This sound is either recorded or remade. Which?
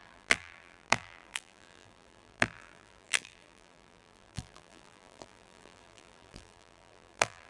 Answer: remade